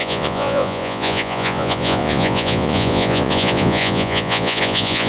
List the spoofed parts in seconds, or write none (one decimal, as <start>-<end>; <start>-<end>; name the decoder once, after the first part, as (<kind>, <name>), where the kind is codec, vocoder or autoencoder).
0.0-5.1 (vocoder, Vocos)